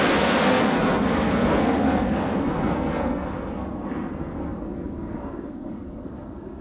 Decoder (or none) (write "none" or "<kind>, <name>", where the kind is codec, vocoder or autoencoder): codec, SNAC